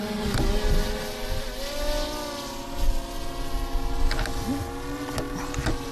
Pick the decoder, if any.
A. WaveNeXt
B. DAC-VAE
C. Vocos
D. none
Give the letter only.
D